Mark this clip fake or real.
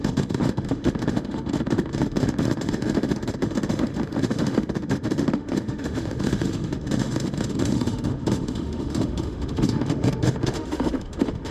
fake